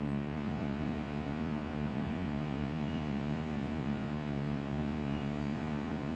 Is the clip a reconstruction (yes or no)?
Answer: yes